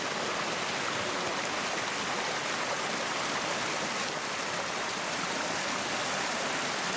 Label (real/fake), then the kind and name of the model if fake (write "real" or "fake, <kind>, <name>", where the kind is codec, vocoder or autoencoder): real